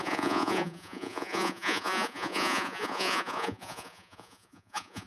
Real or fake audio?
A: fake